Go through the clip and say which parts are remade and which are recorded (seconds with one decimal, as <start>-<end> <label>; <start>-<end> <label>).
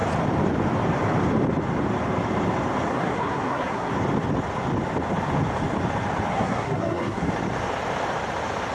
0.0-2.9 recorded; 2.9-3.9 remade; 3.9-6.3 recorded; 6.3-7.3 remade; 7.3-8.7 recorded